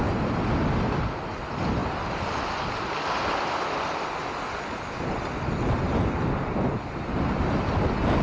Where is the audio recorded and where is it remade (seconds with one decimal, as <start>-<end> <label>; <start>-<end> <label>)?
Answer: 0.0-8.2 recorded

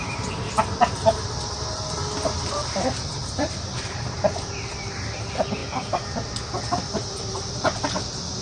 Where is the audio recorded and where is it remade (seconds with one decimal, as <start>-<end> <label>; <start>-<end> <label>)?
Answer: 0.0-8.4 remade

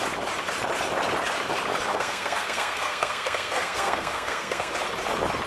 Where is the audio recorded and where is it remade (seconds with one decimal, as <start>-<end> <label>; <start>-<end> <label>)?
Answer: 0.0-1.9 recorded; 1.9-4.7 remade; 4.7-5.5 recorded

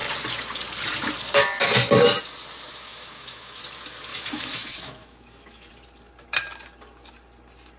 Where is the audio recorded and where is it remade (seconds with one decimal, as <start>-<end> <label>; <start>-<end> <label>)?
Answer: 0.0-2.7 recorded; 2.7-3.6 remade; 3.6-4.1 recorded; 4.1-5.7 remade; 5.7-7.8 recorded